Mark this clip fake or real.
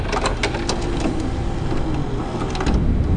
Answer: real